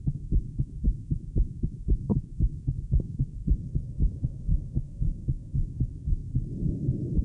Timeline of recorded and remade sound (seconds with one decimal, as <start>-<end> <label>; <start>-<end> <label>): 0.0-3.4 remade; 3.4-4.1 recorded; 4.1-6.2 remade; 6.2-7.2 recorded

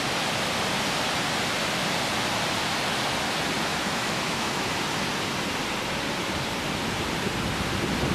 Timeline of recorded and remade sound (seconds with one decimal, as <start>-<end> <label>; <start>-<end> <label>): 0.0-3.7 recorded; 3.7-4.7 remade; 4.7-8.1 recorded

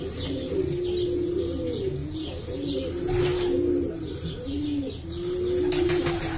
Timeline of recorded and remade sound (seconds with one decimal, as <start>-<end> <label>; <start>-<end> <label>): 0.0-6.4 recorded

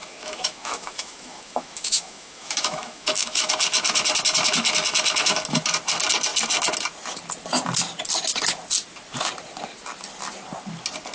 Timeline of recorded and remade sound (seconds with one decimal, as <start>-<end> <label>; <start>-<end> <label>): 0.0-3.5 remade; 3.5-11.1 recorded

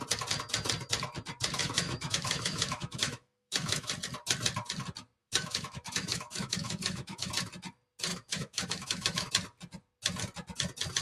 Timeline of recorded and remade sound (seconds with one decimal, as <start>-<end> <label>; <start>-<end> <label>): 0.0-1.6 recorded; 1.6-3.9 remade; 3.9-5.2 recorded; 5.2-7.3 remade; 7.3-8.1 recorded; 8.1-9.3 remade; 9.3-11.0 recorded